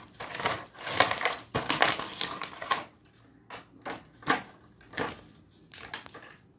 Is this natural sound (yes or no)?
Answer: yes